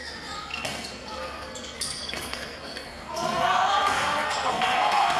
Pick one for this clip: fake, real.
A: fake